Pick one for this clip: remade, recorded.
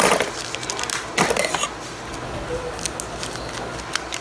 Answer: recorded